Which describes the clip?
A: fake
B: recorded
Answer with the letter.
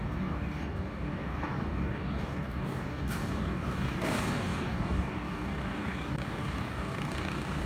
A